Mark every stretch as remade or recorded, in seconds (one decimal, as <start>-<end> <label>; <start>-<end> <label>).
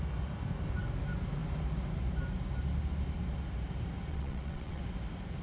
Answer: 0.0-4.1 recorded; 4.1-4.8 remade; 4.8-5.4 recorded